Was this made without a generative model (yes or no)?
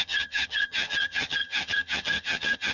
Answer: no